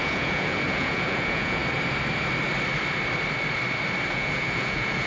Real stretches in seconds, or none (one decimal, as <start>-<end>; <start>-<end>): 1.6-4.1